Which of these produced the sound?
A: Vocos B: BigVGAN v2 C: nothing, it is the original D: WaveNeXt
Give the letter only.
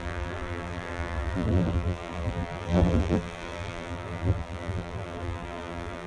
B